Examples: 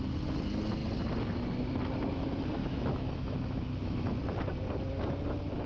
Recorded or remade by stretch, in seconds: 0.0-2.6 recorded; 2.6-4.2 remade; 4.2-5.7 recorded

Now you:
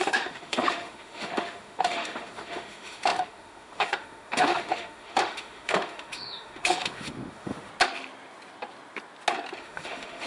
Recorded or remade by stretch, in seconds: 0.0-7.7 remade; 7.7-9.6 recorded; 9.6-10.3 remade